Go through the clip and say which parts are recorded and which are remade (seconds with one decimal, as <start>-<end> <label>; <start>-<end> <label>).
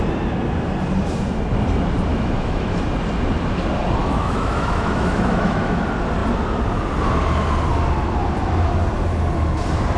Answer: 0.0-2.1 recorded; 2.1-2.8 remade; 2.8-4.0 recorded; 4.0-5.8 remade; 5.8-10.0 recorded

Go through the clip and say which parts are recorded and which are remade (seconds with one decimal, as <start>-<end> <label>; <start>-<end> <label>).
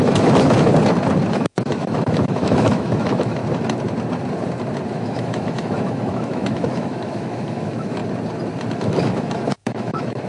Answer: 0.0-0.7 remade; 0.7-1.3 recorded; 1.3-3.4 remade; 3.4-4.9 recorded; 4.9-8.0 remade; 8.0-8.8 recorded; 8.8-10.3 remade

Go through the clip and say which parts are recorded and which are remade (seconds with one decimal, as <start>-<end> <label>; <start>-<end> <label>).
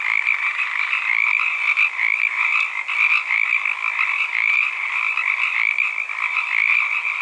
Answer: 0.0-7.2 recorded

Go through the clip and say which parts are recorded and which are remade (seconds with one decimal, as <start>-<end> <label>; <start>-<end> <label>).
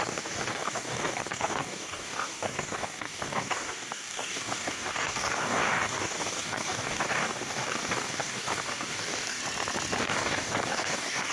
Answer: 0.0-9.4 remade; 9.4-10.0 recorded; 10.0-11.3 remade